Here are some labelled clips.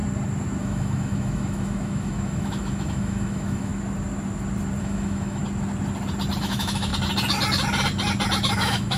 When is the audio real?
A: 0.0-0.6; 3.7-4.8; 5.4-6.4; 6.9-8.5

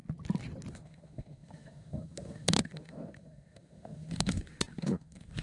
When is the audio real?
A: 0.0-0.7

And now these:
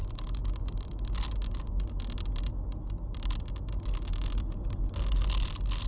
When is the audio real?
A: 0.0-5.9